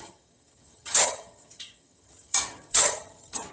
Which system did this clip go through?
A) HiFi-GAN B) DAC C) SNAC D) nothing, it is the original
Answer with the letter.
A